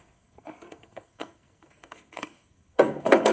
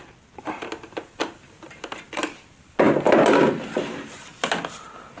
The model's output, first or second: first